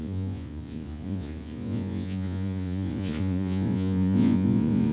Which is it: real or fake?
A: fake